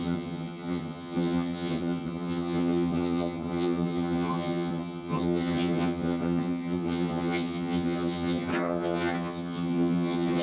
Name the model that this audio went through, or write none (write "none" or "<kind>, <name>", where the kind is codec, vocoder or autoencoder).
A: vocoder, HiFi-GAN